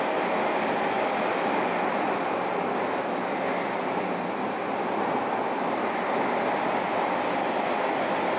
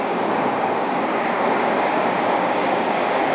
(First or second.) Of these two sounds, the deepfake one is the second